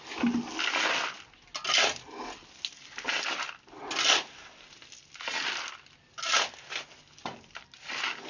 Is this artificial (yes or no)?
no